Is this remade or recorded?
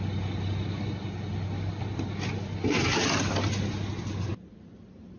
recorded